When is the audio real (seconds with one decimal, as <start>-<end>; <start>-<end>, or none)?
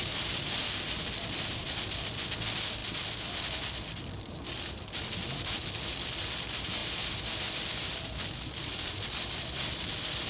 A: 6.8-7.4